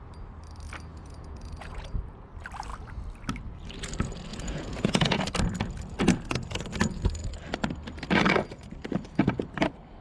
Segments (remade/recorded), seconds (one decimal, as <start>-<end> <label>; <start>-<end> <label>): 0.0-0.9 recorded; 0.9-2.3 remade; 2.3-4.3 recorded; 4.3-5.2 remade; 5.2-10.0 recorded

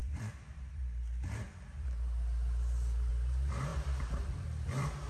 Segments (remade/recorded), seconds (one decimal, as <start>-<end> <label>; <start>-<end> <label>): 0.0-3.1 remade; 3.1-3.7 recorded; 3.7-5.1 remade

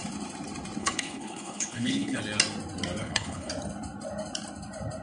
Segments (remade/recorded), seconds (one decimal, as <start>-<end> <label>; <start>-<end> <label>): 0.0-0.8 recorded; 0.8-2.2 remade; 2.2-3.0 recorded; 3.0-3.5 remade; 3.5-5.0 recorded

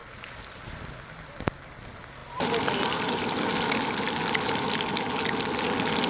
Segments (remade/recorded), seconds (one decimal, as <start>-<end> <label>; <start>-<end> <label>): 0.0-6.1 recorded

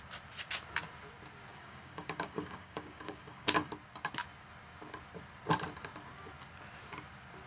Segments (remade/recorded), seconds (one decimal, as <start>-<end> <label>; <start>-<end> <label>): 0.0-1.5 recorded; 1.5-3.7 remade; 3.7-7.5 recorded

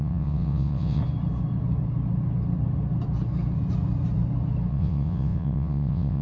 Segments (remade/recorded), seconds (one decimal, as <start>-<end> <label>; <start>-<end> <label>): 0.0-1.0 remade; 1.0-4.7 recorded; 4.7-6.2 remade